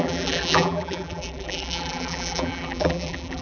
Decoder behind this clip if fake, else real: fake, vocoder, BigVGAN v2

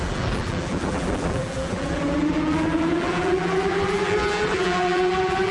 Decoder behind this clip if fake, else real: fake, vocoder, BigVGAN v2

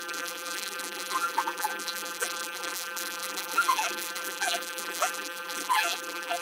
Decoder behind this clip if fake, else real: fake, vocoder, BigVGAN v2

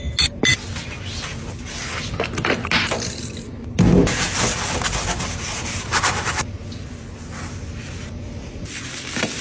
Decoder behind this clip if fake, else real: real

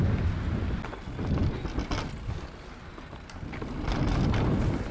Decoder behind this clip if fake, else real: real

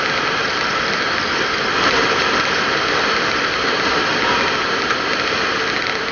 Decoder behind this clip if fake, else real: real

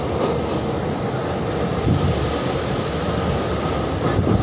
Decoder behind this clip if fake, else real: real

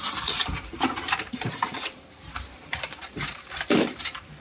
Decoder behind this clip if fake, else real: fake, vocoder, BigVGAN v2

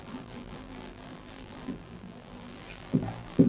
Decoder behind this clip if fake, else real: fake, vocoder, BigVGAN v2